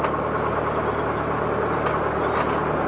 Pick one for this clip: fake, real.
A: real